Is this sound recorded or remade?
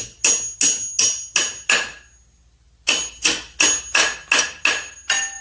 recorded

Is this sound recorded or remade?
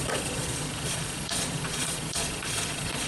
remade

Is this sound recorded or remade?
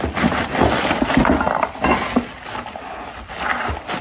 recorded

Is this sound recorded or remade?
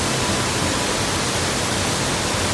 recorded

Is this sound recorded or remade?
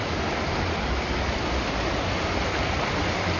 recorded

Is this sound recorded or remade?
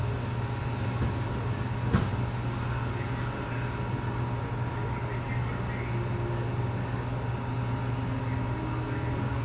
recorded